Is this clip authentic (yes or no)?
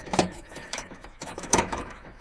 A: no